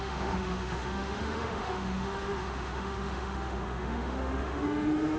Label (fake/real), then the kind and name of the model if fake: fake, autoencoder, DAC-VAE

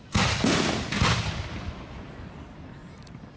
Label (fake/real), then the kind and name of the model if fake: real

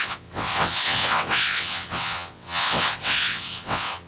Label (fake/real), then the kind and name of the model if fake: fake, vocoder, WaveNeXt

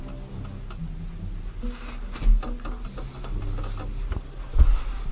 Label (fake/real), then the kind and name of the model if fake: real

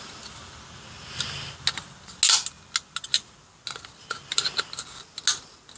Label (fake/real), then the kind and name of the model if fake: real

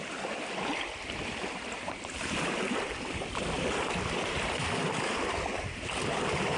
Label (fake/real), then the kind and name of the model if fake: fake, vocoder, BigVGAN v2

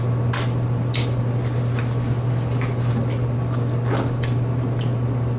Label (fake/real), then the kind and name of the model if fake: real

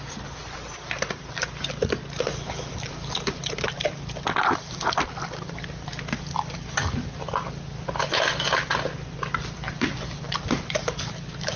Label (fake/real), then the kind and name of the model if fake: real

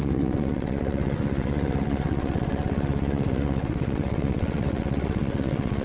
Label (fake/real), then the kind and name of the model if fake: fake, vocoder, WaveNeXt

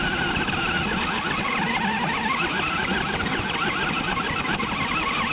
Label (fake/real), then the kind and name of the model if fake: real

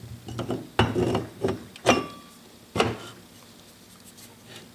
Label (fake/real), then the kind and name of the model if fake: real